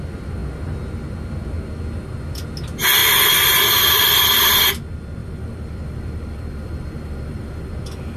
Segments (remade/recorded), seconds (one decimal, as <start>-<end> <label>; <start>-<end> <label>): 0.0-3.0 recorded; 3.0-4.3 remade; 4.3-5.2 recorded; 5.2-7.7 remade; 7.7-8.2 recorded

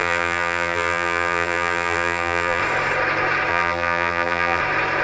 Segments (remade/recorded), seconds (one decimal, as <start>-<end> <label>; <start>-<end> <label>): 0.0-2.6 remade; 2.6-3.5 recorded; 3.5-4.6 remade; 4.6-5.0 recorded

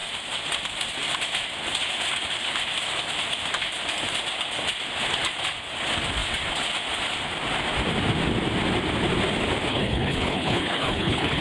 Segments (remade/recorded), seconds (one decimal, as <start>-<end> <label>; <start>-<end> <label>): 0.0-9.7 recorded; 9.7-11.4 remade

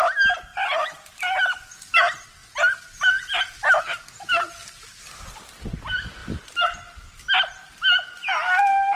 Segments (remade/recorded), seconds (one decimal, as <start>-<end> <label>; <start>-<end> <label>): 0.0-9.0 recorded

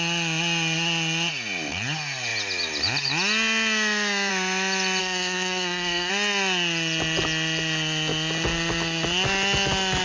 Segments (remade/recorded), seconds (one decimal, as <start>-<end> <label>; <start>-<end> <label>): 0.0-5.0 recorded; 5.0-6.1 remade; 6.1-10.0 recorded

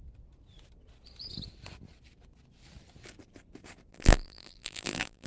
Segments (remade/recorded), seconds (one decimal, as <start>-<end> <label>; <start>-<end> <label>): 0.0-3.9 recorded; 3.9-5.3 remade

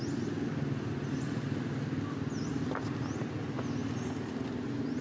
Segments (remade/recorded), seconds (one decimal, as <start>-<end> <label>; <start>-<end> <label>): 0.0-5.0 recorded